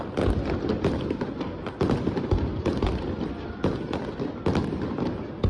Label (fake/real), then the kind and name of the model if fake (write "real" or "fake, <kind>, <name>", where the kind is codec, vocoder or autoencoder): real